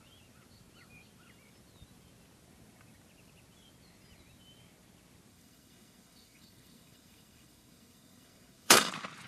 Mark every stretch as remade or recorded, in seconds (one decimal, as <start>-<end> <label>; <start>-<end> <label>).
0.0-5.3 recorded; 5.3-8.9 remade; 8.9-9.3 recorded